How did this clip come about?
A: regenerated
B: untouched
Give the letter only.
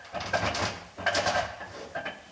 A